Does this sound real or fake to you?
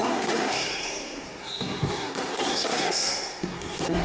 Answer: fake